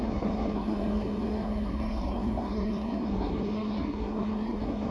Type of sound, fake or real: fake